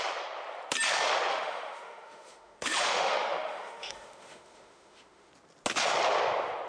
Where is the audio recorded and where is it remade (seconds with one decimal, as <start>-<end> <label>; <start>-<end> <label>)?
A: 0.0-1.3 recorded; 1.3-5.3 remade; 5.3-6.7 recorded